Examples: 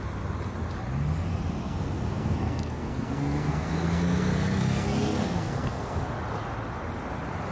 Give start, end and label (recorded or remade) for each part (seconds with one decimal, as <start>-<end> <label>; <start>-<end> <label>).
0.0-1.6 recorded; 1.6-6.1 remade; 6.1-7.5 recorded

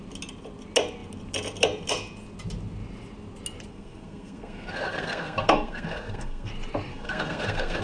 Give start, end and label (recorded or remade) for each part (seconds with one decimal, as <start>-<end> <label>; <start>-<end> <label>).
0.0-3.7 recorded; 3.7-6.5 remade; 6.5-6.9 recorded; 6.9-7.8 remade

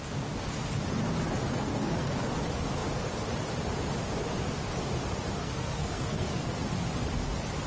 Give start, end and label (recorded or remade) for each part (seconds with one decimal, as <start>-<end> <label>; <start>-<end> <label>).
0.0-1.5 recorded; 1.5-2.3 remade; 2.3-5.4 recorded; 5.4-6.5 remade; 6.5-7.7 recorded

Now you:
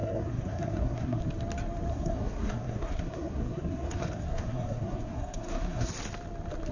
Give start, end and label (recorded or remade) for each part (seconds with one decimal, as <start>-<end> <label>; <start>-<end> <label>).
0.0-1.2 remade; 1.2-1.9 recorded; 1.9-5.9 remade; 5.9-6.7 recorded